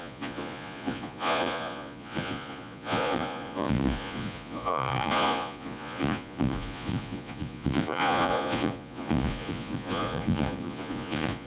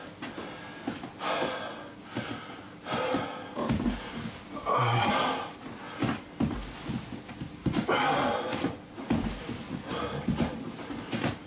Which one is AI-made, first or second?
first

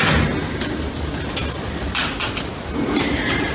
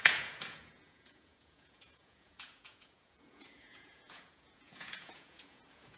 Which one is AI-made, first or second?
second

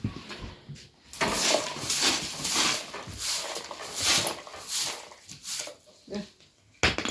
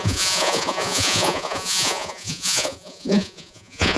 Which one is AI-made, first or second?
second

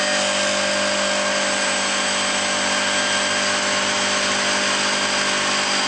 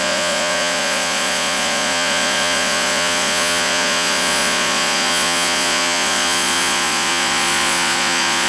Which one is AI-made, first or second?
second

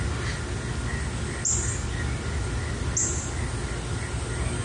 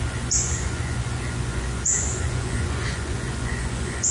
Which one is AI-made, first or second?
second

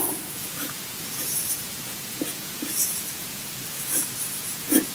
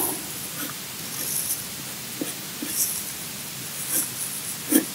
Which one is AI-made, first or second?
first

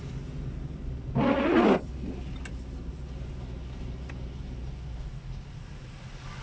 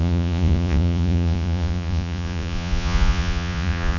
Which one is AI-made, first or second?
second